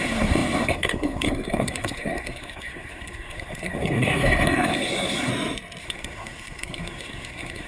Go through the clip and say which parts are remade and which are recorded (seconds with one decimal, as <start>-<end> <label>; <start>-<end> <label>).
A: 0.0-5.3 remade; 5.3-5.8 recorded; 5.8-7.7 remade